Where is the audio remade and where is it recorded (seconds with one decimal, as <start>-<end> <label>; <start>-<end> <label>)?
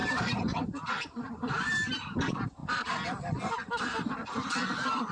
0.0-5.1 remade